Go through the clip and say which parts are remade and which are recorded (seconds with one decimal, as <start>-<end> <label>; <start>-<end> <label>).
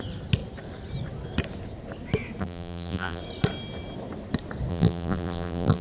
0.0-2.4 recorded; 2.4-3.2 remade; 3.2-4.7 recorded; 4.7-5.8 remade